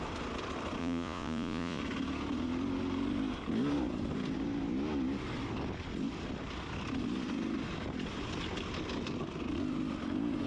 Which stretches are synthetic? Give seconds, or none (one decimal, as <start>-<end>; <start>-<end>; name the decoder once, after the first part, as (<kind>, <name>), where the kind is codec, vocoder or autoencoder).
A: 0.8-1.8 (vocoder, Vocos)